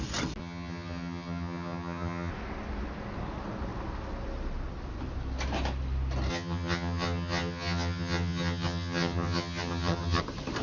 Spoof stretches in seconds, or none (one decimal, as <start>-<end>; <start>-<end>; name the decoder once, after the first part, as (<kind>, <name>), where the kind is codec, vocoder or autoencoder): 0.4-2.3 (vocoder, HiFi-GAN); 6.3-10.2